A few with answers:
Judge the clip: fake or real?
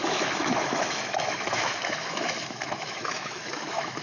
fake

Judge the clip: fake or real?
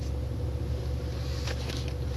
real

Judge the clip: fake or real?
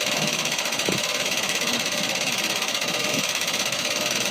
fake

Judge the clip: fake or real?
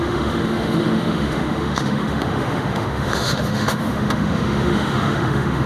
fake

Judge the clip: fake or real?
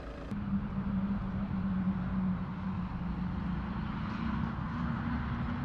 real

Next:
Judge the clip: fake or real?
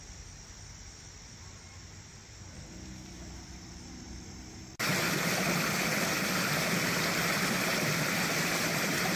real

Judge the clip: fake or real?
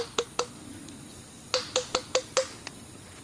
real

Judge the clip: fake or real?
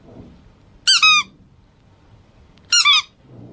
real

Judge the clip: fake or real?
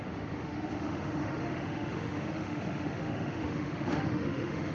fake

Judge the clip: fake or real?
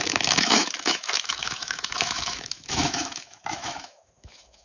fake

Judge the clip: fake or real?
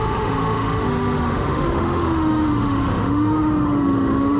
fake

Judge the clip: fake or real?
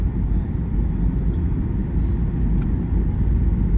real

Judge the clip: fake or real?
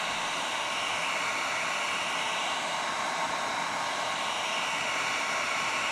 real